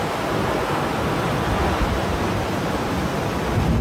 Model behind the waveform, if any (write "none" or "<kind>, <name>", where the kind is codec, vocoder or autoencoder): none